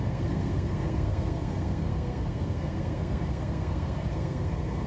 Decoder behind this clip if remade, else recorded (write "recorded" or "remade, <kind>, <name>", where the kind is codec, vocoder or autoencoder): remade, codec, SNAC